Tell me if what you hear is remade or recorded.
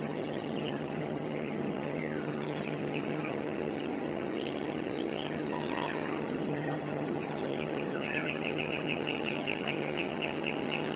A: remade